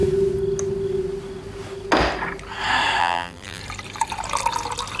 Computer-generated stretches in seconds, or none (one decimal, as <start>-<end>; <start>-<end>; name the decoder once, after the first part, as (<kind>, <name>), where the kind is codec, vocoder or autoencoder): 3.0-3.6 (vocoder, BigVGAN v2)